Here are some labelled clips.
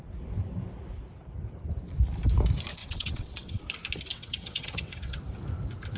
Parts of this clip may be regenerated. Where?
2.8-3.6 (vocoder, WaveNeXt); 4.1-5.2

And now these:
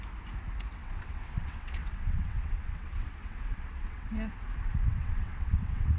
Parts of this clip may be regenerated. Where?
0.8-4.1 (vocoder, WaveNeXt); 4.9-6.0

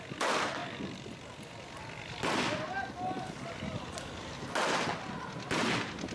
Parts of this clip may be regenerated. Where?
none